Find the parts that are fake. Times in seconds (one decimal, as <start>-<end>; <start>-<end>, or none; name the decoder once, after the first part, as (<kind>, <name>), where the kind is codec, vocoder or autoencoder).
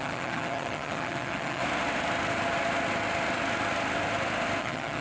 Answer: 0.0-1.6 (vocoder, HiFi-GAN); 4.6-5.0